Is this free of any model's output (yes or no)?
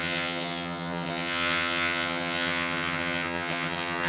no